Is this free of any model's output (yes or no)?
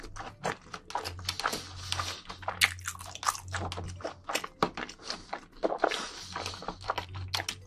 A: yes